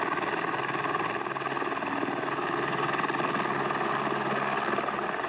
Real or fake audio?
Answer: real